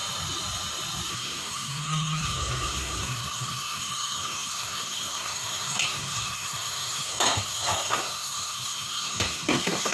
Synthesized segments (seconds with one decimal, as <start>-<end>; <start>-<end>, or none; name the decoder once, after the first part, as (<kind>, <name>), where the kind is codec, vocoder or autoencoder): 1.1-9.9 (codec, SNAC)